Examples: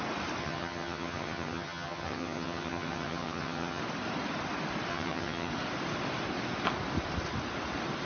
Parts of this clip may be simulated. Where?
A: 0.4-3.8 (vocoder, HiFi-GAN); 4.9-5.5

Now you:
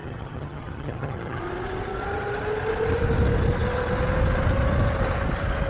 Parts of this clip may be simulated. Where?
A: 0.0-1.4 (vocoder, HiFi-GAN)

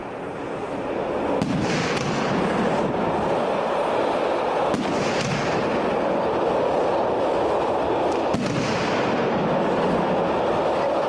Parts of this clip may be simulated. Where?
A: 0.0-0.7 (vocoder, BigVGAN v2)

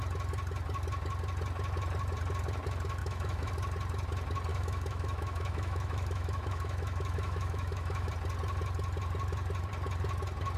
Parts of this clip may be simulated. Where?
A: 3.0-3.5 (autoencoder, DAC-VAE); 4.5-8.1

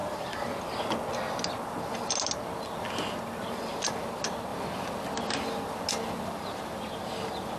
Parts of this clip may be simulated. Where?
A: none

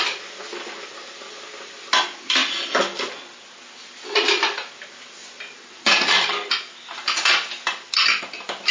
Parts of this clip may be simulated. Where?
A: none

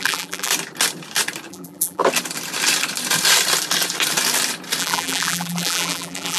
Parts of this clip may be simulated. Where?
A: 0.0-0.5 (vocoder, BigVGAN v2); 1.5-2.0; 4.8-6.4